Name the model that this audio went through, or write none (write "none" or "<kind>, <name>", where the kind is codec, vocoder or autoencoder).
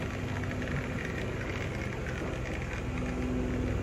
none